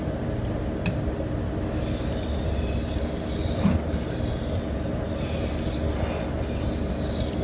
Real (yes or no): yes